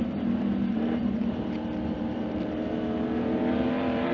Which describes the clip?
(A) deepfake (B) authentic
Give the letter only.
A